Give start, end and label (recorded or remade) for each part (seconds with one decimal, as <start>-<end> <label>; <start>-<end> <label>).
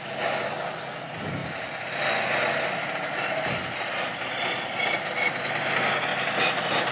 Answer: 0.0-6.1 recorded; 6.1-6.9 remade